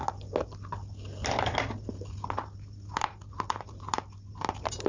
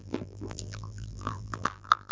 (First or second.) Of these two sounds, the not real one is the second